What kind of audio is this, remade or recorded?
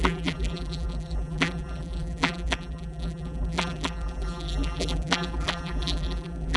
remade